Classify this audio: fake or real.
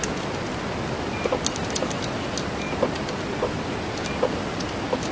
real